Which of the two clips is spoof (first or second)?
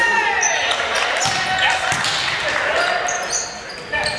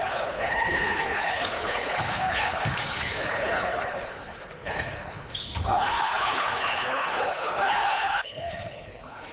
second